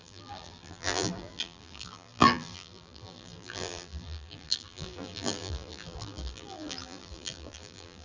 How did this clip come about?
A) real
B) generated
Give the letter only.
B